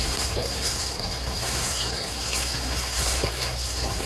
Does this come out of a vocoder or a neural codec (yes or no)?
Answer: yes